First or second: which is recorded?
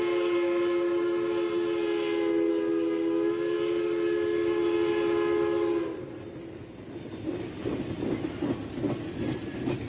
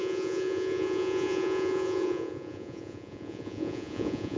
first